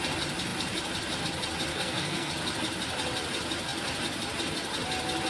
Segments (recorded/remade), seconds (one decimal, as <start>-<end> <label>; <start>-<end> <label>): 0.0-1.7 recorded; 1.7-2.3 remade; 2.3-5.3 recorded